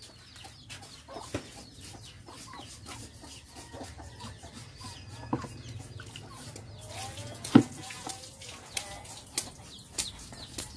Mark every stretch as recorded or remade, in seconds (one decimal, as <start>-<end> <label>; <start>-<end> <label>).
0.0-7.2 recorded; 7.2-8.1 remade; 8.1-10.8 recorded

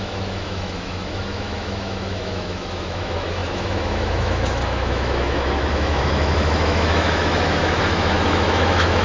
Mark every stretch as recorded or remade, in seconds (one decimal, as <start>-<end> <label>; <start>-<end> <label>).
0.0-9.0 remade

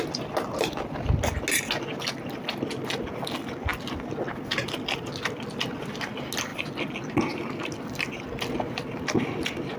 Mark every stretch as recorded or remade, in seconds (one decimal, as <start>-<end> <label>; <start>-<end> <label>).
0.0-9.8 recorded

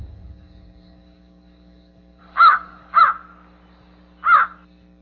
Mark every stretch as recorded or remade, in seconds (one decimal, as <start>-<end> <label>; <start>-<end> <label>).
0.0-3.0 remade; 3.0-5.0 recorded

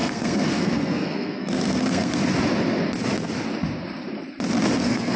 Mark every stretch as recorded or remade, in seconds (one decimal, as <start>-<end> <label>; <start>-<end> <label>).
0.0-2.2 remade; 2.2-4.8 recorded; 4.8-5.2 remade

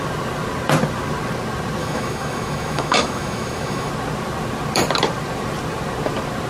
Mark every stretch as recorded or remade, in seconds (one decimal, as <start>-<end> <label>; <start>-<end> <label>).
0.0-1.8 recorded; 1.8-3.9 remade; 3.9-6.5 recorded

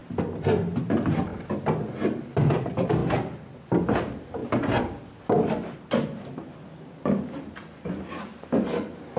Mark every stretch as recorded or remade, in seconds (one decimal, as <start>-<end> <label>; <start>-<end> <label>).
0.0-0.8 recorded; 0.8-1.3 remade; 1.3-2.2 recorded; 2.2-3.0 remade; 3.0-3.7 recorded; 3.7-4.4 remade; 4.4-5.9 recorded; 5.9-9.2 remade

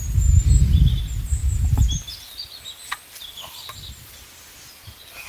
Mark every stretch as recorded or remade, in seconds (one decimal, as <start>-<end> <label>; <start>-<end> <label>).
0.0-5.3 recorded